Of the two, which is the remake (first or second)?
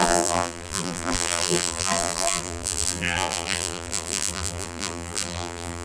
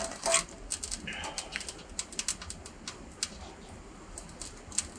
first